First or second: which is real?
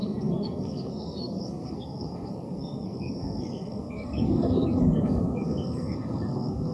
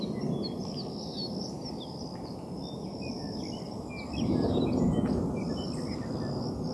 second